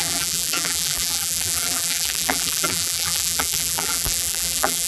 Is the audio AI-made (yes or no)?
yes